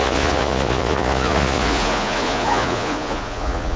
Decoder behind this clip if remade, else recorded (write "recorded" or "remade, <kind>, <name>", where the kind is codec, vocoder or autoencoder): remade, vocoder, Vocos